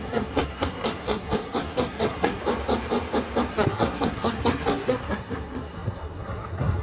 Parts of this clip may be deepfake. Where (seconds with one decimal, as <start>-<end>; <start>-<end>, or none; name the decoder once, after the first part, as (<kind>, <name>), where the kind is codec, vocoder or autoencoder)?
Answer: 0.0-2.4 (codec, SNAC); 3.5-6.8

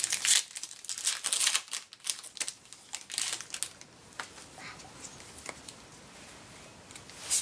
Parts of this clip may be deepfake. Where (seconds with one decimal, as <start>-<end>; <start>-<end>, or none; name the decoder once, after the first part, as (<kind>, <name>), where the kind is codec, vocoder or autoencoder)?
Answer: none

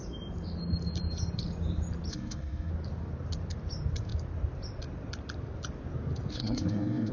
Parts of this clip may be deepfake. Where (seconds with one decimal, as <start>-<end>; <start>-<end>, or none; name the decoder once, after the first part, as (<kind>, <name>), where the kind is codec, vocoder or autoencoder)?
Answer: 2.1-2.7 (codec, SNAC); 6.3-7.1

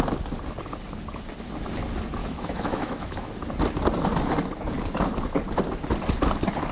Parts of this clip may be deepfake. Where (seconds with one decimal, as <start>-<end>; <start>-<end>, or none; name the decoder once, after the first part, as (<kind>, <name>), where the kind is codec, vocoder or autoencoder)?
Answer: 2.2-3.4 (autoencoder, DAC-VAE)

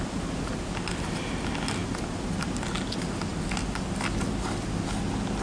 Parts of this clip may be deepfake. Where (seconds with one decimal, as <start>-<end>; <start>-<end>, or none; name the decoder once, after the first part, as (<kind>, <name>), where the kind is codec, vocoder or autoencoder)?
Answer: none